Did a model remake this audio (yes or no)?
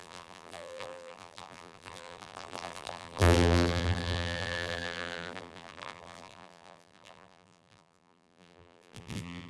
yes